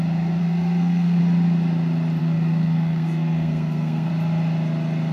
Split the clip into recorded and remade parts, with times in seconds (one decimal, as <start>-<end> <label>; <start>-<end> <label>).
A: 0.0-0.4 recorded; 0.4-1.2 remade; 1.2-2.2 recorded; 2.2-4.1 remade; 4.1-5.1 recorded

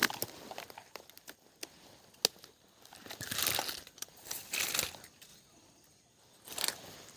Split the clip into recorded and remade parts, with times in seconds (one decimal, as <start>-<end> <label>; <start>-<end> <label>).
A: 0.0-7.2 recorded

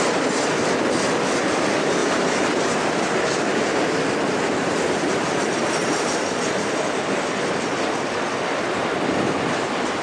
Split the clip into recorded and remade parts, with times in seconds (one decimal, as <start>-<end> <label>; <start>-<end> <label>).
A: 0.0-10.0 recorded

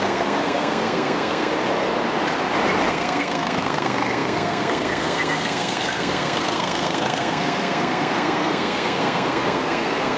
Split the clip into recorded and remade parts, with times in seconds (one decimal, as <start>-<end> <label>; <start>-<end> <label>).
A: 0.0-1.5 remade; 1.5-2.9 recorded; 2.9-10.2 remade